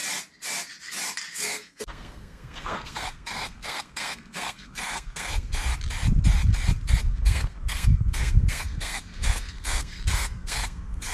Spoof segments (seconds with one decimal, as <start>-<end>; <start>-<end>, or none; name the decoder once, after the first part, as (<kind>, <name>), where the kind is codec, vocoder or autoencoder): 1.3-5.7 (codec, SNAC); 7.0-11.1